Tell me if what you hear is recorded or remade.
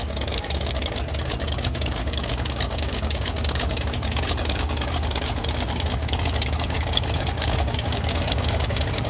remade